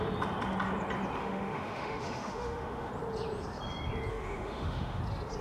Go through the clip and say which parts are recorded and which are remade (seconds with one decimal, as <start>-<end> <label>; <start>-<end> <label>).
0.0-1.2 recorded; 1.2-2.9 remade; 2.9-4.1 recorded; 4.1-5.0 remade; 5.0-5.4 recorded